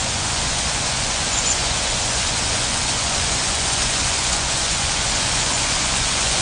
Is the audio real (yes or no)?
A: no